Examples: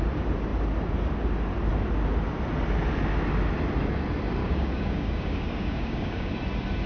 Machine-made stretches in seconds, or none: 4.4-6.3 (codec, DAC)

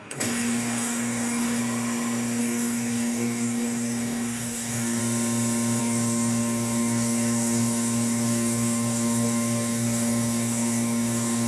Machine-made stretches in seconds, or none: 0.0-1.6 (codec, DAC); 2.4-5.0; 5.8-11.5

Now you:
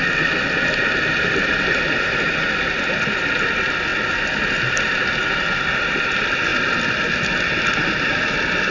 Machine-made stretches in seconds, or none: none

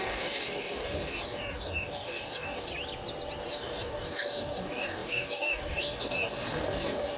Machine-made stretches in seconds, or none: 0.0-2.7 (codec, DAC); 3.5-7.2

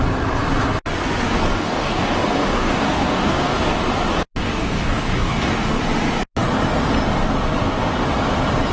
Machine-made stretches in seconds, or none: 1.5-3.6 (codec, DAC); 4.4-5.8